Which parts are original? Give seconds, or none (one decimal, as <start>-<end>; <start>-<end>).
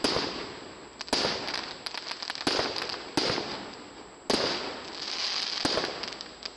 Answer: 0.0-6.6